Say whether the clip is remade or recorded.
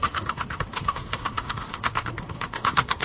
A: remade